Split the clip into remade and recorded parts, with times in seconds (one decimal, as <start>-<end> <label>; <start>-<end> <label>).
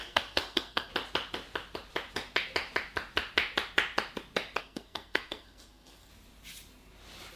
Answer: 0.0-0.9 remade; 0.9-4.6 recorded; 4.6-6.1 remade; 6.1-7.4 recorded